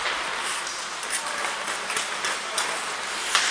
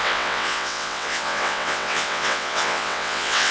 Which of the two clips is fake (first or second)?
second